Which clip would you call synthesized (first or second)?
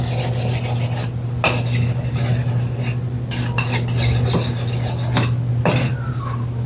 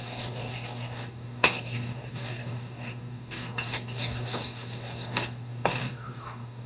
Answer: second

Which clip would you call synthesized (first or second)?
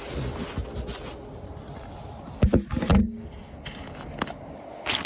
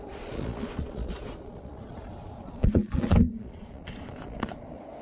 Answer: second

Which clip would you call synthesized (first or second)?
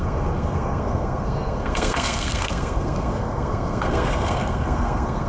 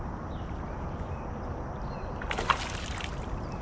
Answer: first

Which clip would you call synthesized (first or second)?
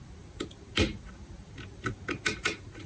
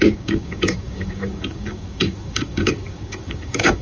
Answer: second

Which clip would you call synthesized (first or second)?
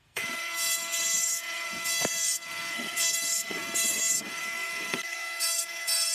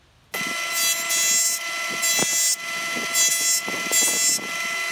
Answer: first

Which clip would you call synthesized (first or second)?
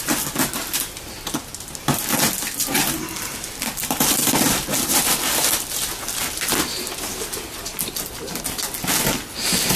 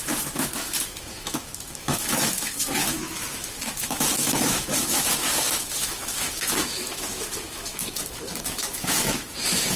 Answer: second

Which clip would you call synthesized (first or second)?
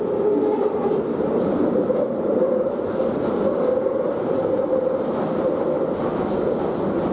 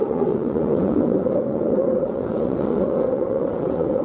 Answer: second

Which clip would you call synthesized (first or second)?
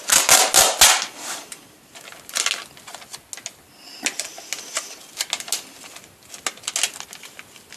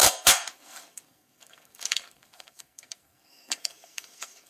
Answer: second